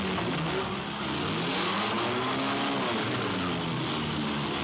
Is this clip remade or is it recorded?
recorded